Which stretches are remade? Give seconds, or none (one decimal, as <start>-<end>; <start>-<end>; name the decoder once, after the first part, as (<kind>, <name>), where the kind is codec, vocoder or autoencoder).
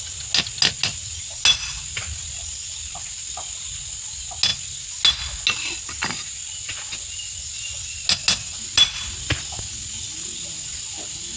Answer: none